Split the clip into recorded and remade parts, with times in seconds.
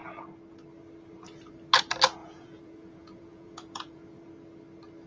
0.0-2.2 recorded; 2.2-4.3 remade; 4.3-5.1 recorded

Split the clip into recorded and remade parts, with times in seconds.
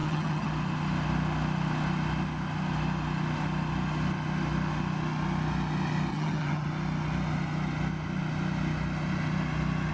0.0-0.5 remade; 0.5-6.1 recorded; 6.1-6.7 remade; 6.7-9.9 recorded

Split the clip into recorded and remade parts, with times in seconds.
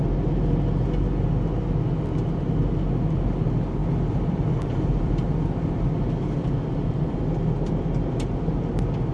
0.0-3.8 recorded; 3.8-7.2 remade; 7.2-9.1 recorded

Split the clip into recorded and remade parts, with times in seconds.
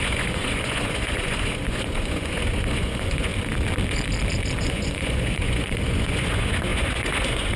0.0-3.3 remade; 3.3-4.6 recorded; 4.6-7.6 remade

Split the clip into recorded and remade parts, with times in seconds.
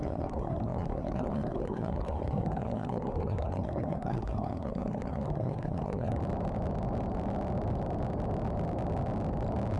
0.0-6.2 remade; 6.2-9.8 recorded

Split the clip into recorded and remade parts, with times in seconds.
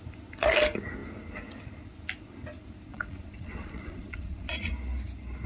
0.0-2.9 recorded; 2.9-4.7 remade; 4.7-5.5 recorded